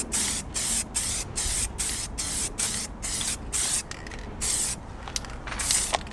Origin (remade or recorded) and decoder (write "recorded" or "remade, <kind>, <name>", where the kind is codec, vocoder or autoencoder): recorded